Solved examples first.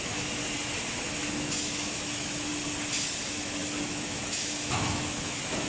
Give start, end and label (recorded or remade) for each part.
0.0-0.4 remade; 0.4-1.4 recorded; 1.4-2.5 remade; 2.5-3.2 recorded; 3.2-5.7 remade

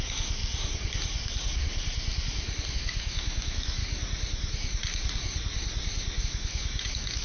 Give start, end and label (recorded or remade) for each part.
0.0-0.4 remade; 0.4-2.7 recorded; 2.7-3.8 remade; 3.8-6.2 recorded; 6.2-7.2 remade

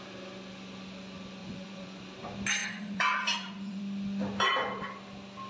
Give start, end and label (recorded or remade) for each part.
0.0-1.4 recorded; 1.4-2.0 remade; 2.0-2.6 recorded; 2.6-3.8 remade; 3.8-5.5 recorded

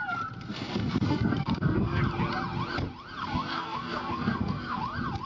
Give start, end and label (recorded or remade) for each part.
0.0-0.5 recorded; 0.5-2.0 remade; 2.0-3.2 recorded; 3.2-4.8 remade; 4.8-5.3 recorded